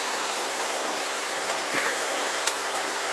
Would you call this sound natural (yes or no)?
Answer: no